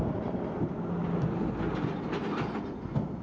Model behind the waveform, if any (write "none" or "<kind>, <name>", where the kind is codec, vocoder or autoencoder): none